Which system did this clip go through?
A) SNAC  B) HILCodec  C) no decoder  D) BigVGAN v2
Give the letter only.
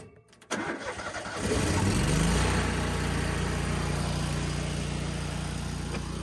C